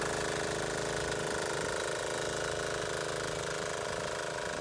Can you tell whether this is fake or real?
real